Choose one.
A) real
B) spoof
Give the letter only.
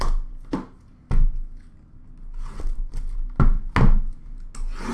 A